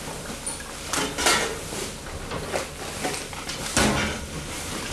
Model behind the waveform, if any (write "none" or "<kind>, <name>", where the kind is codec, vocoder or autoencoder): none